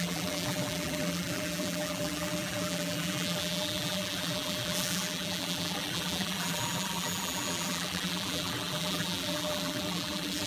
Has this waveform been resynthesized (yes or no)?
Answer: yes